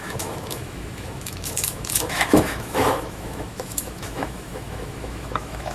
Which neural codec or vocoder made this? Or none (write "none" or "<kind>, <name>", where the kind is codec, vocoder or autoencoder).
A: autoencoder, DAC-VAE